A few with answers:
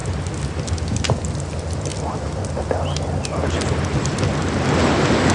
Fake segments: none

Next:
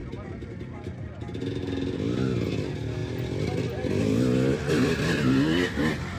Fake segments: none

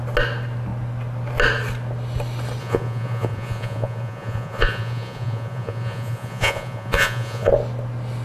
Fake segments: 2.6-7.5 (vocoder, Vocos)

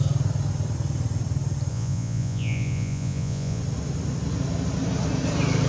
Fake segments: 1.7-3.6 (vocoder, Vocos)

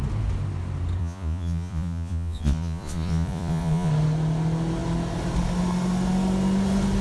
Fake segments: 1.0-3.9 (vocoder, Vocos)

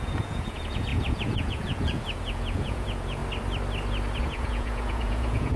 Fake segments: 0.0-3.2 (vocoder, Vocos); 4.2-5.6